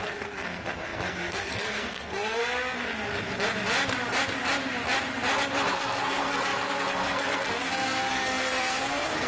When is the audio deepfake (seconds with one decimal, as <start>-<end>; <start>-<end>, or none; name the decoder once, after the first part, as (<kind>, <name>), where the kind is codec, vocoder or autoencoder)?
0.0-2.4 (codec, SNAC); 5.7-9.3